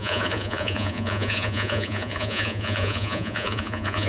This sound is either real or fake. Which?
fake